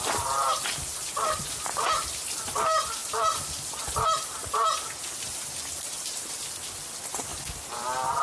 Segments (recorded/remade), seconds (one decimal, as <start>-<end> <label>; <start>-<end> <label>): 0.0-8.2 recorded